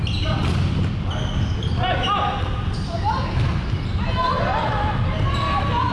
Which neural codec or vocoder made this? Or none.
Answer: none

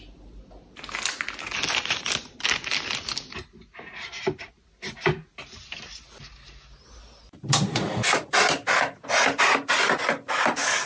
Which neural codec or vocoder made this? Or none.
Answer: none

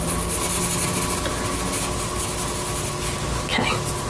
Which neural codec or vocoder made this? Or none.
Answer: none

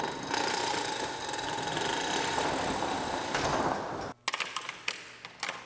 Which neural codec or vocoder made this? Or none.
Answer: none